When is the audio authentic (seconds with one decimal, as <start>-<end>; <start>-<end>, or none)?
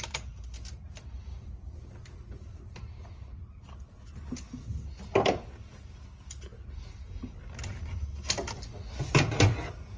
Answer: 0.0-10.0